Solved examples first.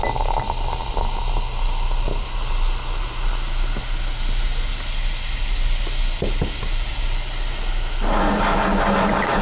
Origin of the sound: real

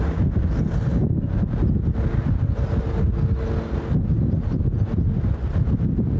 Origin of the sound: real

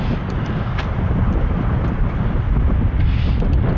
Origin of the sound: real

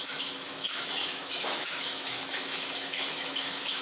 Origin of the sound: fake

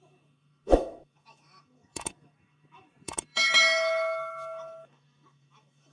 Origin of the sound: fake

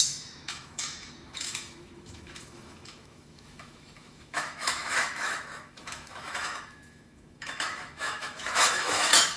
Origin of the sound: fake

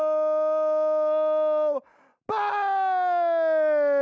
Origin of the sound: real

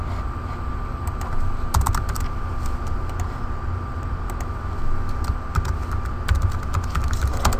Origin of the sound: real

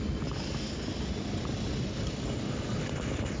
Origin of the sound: real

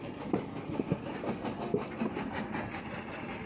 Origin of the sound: real